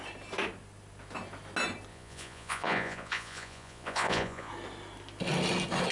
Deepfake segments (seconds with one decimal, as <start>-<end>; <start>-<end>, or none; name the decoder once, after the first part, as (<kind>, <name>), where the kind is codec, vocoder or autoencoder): 1.9-4.5 (vocoder, Vocos)